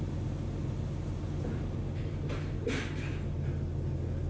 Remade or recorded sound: recorded